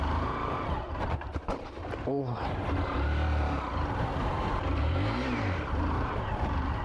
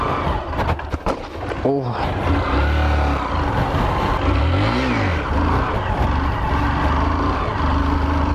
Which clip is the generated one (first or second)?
first